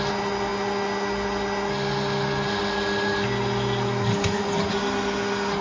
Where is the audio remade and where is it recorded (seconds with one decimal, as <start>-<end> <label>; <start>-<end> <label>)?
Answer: 0.0-5.6 recorded